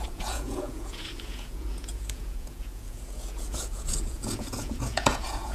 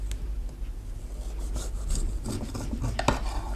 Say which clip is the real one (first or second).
second